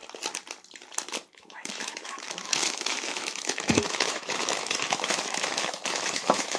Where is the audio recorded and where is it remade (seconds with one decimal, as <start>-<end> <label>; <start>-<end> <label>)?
0.0-1.3 recorded; 1.3-6.6 remade